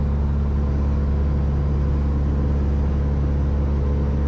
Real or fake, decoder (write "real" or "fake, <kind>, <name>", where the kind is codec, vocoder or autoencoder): real